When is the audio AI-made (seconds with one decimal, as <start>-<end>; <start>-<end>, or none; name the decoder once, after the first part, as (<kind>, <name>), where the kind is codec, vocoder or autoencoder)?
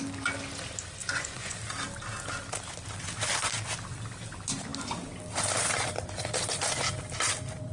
1.0-1.6 (vocoder, Vocos)